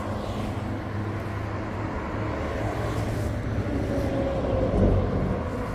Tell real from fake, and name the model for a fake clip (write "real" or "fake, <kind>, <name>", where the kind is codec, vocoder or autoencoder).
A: real